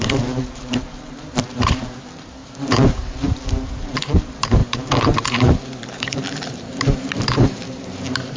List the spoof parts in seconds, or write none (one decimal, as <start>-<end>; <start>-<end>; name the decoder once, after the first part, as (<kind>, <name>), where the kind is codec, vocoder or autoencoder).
0.0-8.4 (vocoder, BigVGAN v2)